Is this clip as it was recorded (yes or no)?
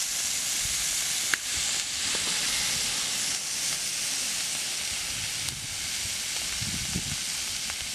yes